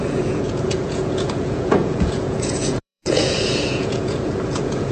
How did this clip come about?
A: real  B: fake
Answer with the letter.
B